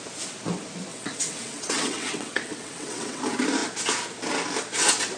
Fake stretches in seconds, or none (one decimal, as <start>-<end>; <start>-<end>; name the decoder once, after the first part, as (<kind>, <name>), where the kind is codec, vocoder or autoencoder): 0.9-3.2 (vocoder, WaveNeXt)